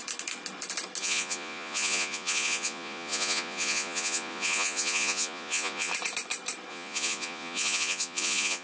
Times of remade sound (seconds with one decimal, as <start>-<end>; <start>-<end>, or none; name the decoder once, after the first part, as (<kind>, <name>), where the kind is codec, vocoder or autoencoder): 1.0-5.9 (vocoder, Vocos); 6.7-8.6